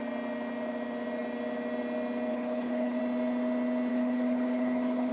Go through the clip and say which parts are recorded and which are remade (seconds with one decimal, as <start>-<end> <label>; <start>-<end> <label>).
0.0-2.3 recorded; 2.3-3.0 remade; 3.0-3.9 recorded; 3.9-5.1 remade